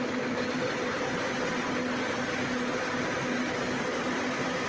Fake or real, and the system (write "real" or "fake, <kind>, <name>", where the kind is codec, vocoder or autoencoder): real